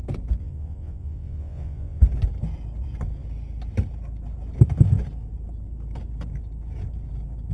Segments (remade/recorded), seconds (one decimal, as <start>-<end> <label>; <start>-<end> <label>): 0.0-0.4 recorded; 0.4-2.0 remade; 2.0-7.5 recorded